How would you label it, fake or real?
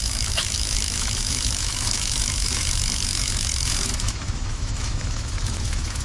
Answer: fake